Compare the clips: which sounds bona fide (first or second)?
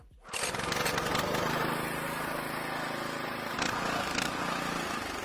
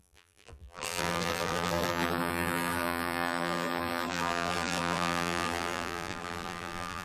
first